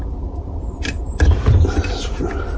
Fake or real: fake